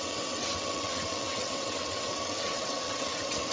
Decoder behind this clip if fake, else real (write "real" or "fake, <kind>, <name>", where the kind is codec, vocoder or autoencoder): fake, vocoder, WaveNeXt